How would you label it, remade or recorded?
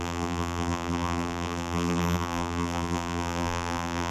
remade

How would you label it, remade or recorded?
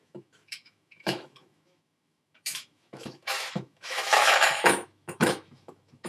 remade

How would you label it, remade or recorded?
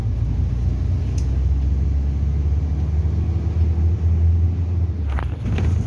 recorded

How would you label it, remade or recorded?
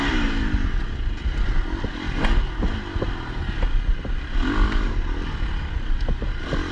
recorded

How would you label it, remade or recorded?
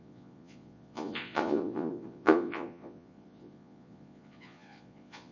remade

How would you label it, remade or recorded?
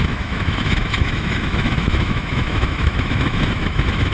remade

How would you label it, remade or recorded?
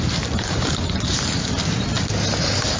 recorded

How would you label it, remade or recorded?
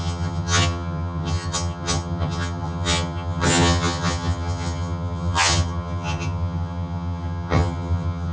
remade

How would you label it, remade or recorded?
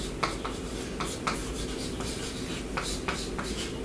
recorded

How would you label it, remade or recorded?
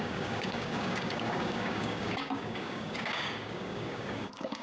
remade